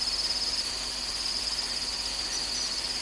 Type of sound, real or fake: fake